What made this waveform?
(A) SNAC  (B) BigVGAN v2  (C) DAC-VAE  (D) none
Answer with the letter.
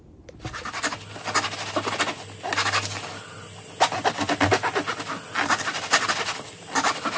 D